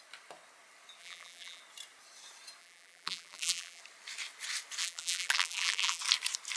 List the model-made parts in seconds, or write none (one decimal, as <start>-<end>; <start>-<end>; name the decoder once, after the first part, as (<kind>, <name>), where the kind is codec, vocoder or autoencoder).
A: 1.0-1.6 (vocoder, BigVGAN v2); 2.6-3.8; 4.8-6.0